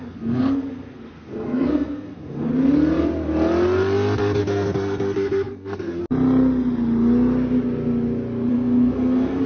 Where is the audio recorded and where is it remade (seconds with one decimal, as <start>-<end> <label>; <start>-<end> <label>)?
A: 0.0-2.5 remade; 2.5-4.4 recorded; 4.4-6.0 remade; 6.0-8.5 recorded; 8.5-9.5 remade